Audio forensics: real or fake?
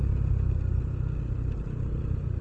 real